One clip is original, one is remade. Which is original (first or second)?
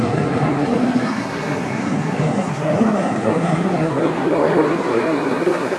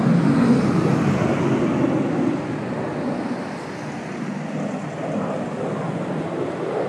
second